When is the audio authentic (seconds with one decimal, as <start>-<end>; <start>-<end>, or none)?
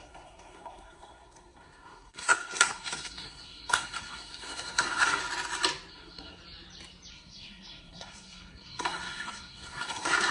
5.2-5.9; 6.4-7.1